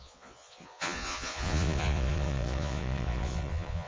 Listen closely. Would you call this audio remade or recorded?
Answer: remade